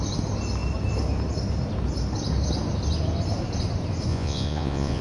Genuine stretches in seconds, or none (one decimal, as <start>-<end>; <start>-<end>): 0.0-4.1